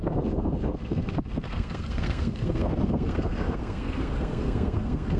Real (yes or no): no